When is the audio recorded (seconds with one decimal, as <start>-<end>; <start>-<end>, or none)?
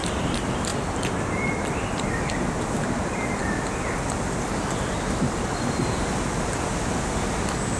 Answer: 0.0-7.8